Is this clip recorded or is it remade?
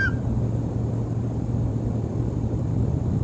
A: remade